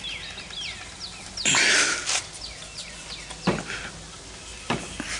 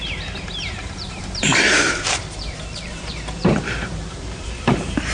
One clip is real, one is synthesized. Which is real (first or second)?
first